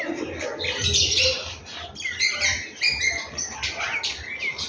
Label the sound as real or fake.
real